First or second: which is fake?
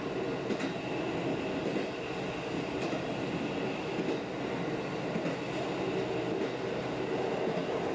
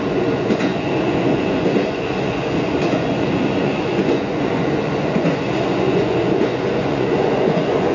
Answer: second